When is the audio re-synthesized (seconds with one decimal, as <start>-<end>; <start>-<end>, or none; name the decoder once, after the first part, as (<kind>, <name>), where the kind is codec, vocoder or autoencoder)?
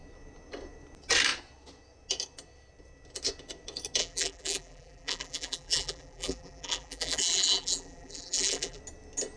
4.0-8.8 (vocoder, BigVGAN v2)